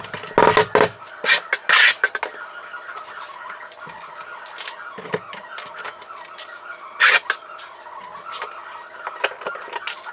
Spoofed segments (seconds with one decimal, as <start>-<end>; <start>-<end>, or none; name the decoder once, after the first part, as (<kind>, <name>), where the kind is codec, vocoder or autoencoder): none